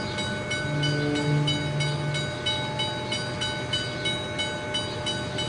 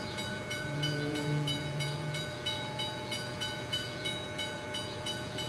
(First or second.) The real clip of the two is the first